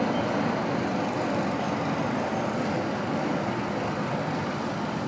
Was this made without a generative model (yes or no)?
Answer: no